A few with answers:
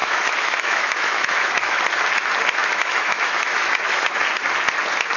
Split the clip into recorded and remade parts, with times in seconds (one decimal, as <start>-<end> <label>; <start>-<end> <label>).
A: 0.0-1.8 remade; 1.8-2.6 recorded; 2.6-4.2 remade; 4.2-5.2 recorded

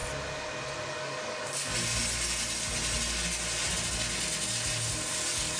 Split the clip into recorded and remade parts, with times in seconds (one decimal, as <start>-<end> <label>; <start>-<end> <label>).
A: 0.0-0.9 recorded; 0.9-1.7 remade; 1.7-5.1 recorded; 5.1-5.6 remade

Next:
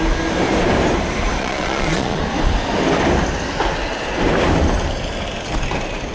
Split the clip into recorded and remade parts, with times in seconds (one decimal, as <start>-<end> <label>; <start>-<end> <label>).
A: 0.0-1.4 recorded; 1.4-2.2 remade; 2.2-6.1 recorded

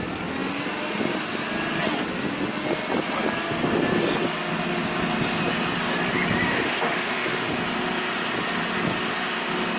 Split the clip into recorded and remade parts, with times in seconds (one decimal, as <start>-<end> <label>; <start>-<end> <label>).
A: 0.0-6.5 recorded; 6.5-7.5 remade; 7.5-9.8 recorded

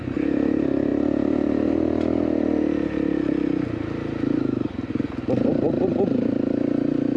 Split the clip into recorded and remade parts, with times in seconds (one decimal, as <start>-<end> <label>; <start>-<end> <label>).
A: 0.0-7.2 recorded

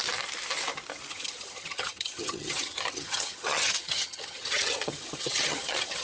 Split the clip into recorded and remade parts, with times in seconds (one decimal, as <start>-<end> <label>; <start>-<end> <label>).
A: 0.0-1.1 recorded; 1.1-6.0 remade